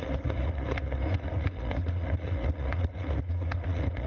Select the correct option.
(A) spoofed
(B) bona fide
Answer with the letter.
A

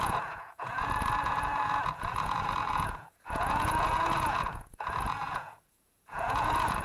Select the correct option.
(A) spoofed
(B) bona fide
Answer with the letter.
A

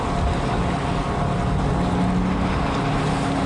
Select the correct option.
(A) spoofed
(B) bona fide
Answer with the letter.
B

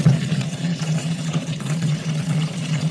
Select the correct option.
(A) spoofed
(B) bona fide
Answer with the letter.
A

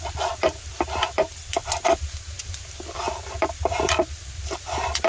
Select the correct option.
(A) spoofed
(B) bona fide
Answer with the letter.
B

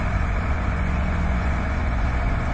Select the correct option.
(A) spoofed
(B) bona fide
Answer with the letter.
A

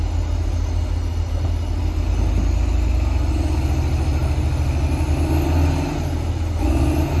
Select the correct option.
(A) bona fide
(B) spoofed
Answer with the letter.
A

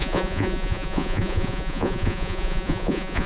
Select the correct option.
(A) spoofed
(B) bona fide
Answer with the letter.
A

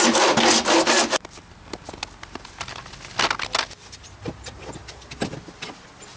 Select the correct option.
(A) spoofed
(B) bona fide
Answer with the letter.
B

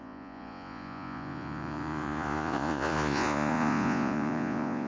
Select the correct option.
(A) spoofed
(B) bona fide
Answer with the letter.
A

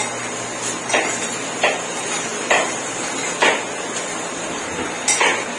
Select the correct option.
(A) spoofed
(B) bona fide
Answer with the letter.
B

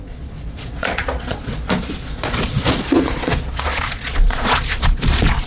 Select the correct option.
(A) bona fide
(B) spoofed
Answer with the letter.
B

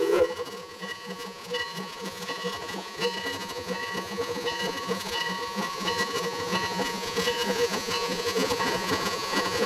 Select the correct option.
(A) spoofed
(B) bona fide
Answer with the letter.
A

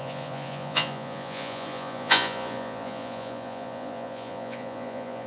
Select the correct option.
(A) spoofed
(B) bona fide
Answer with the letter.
A